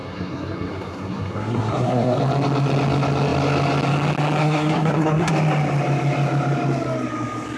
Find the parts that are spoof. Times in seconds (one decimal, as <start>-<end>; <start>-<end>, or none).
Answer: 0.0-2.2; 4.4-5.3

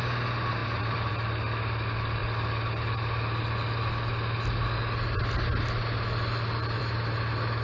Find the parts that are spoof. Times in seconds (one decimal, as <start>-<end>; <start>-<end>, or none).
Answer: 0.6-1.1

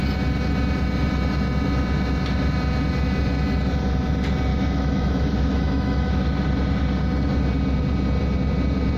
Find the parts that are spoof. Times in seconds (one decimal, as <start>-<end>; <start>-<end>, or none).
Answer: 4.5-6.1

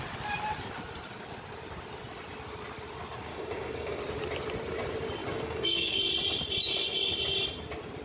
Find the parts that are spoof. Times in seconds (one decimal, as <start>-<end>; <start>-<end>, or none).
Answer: 3.3-4.0; 5.2-6.0